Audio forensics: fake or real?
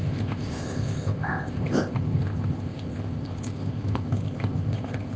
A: fake